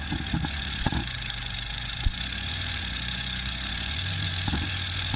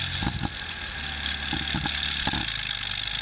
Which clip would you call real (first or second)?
second